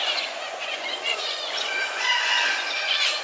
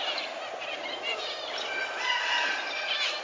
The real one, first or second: second